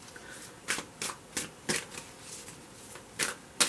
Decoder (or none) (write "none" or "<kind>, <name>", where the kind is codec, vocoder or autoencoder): none